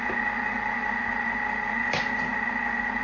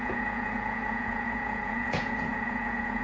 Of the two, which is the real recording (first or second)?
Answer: first